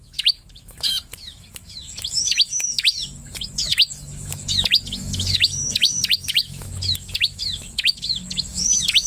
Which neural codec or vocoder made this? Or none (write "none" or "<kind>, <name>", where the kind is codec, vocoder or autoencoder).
autoencoder, DAC-VAE